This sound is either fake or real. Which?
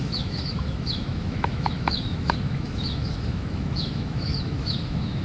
fake